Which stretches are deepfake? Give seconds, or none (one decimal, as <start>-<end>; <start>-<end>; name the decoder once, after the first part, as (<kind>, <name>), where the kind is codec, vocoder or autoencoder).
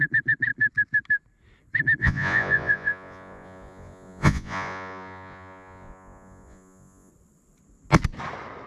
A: 2.0-7.1 (vocoder, Vocos)